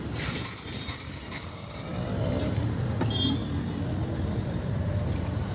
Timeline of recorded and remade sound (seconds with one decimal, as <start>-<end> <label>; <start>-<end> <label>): 0.0-1.9 remade; 1.9-2.4 recorded; 2.4-3.4 remade; 3.4-4.6 recorded; 4.6-5.5 remade

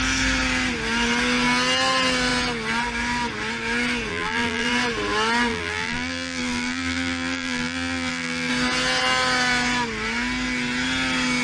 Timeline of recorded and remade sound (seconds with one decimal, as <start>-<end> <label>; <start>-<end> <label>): 0.0-4.1 recorded; 4.1-4.7 remade; 4.7-5.5 recorded; 5.5-8.5 remade; 8.5-11.4 recorded

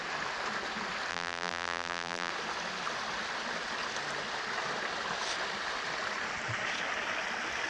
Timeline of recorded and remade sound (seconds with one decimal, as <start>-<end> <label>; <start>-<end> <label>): 0.0-1.1 recorded; 1.1-2.3 remade; 2.3-7.7 recorded

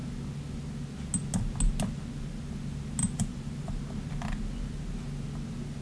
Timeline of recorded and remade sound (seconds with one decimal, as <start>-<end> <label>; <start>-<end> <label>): 0.0-3.0 recorded; 3.0-3.8 remade; 3.8-5.8 recorded

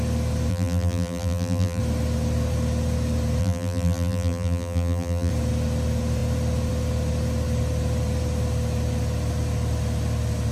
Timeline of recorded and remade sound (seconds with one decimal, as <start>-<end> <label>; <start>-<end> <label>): 0.0-0.5 recorded; 0.5-1.8 remade; 1.8-3.4 recorded; 3.4-5.3 remade; 5.3-10.5 recorded

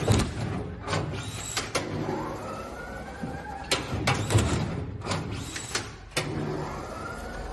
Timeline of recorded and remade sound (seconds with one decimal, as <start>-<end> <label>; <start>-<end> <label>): 0.0-7.5 recorded